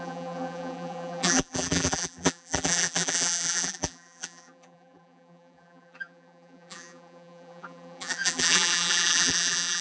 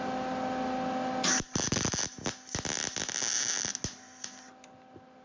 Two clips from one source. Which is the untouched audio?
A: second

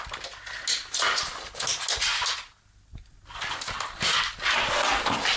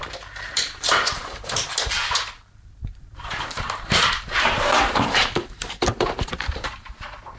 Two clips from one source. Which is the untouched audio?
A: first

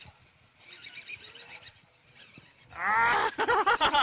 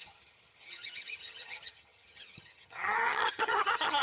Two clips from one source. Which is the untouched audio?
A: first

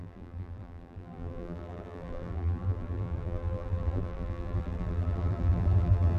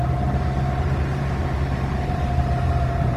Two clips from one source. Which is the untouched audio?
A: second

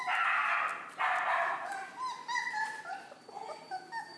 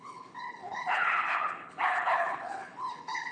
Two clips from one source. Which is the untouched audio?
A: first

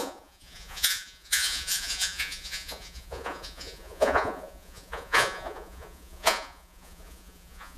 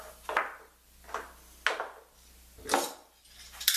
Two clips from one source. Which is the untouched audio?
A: second